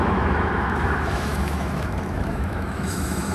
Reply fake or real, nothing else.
fake